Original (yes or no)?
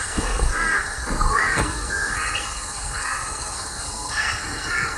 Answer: no